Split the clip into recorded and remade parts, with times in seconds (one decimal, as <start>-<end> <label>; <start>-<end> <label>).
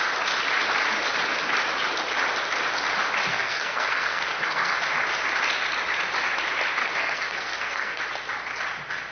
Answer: 0.0-3.3 recorded; 3.3-4.8 remade; 4.8-6.8 recorded; 6.8-8.0 remade; 8.0-9.1 recorded